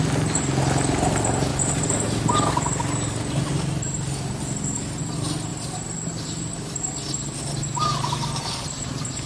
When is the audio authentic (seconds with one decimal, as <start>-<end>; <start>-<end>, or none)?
0.0-1.5; 5.0-5.5; 8.4-9.3